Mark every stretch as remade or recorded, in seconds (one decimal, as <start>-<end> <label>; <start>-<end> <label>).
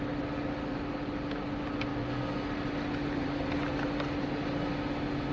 0.0-5.3 recorded